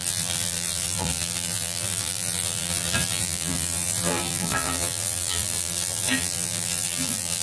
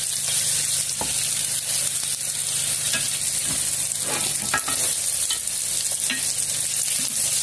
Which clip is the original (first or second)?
second